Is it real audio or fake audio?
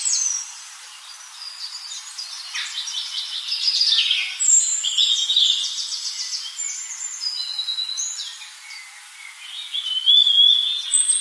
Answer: real